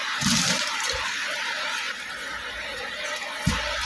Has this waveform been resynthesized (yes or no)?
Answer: yes